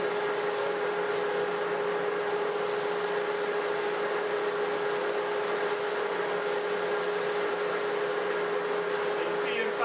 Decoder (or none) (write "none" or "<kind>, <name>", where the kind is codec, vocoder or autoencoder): none